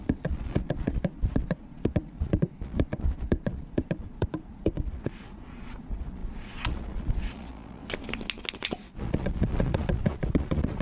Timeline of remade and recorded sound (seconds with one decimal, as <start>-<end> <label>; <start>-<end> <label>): 0.0-7.8 remade; 7.8-8.5 recorded; 8.5-10.8 remade